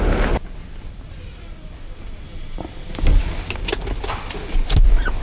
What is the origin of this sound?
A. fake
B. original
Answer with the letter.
B